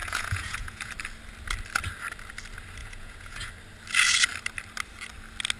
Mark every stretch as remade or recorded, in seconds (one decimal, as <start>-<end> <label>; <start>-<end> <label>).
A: 0.0-0.9 remade; 0.9-2.8 recorded; 2.8-3.5 remade; 3.5-5.6 recorded